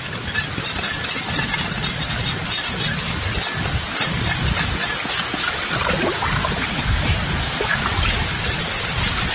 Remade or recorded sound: recorded